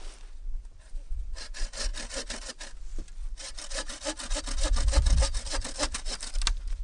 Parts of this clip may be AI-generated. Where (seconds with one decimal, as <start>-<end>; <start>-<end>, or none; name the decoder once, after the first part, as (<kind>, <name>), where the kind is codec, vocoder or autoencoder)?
none